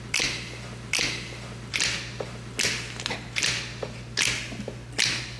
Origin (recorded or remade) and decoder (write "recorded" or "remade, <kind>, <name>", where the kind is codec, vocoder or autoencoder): recorded